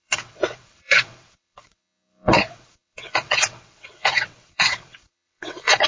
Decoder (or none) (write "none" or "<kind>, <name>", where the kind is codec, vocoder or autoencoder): vocoder, WaveNeXt